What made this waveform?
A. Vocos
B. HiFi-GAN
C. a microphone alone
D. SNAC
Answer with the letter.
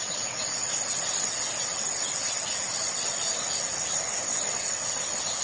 C